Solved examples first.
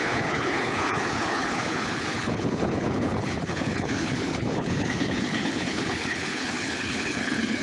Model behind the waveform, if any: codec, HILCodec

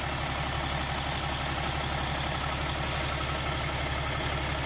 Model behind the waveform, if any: none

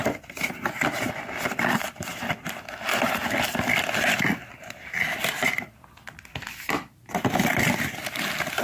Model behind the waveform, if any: none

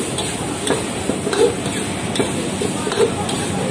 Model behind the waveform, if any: none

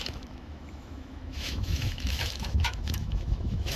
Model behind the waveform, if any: autoencoder, DAC-VAE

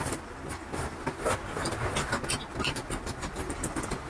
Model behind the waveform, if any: none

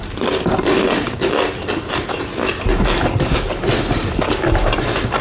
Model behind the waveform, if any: none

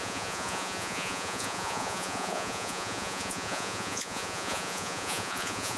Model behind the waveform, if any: vocoder, Vocos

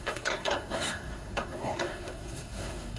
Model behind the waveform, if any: codec, SNAC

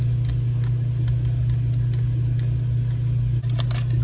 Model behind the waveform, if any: none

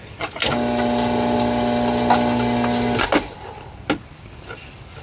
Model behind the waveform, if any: none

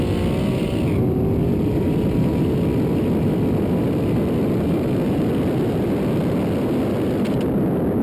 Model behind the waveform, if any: none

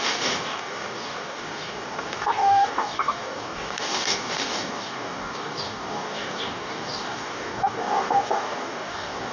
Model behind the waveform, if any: codec, DAC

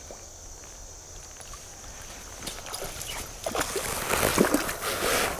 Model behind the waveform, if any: none